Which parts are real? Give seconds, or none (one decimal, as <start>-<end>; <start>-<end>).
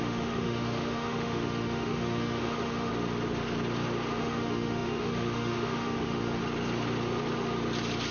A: 2.9-4.2; 6.4-8.1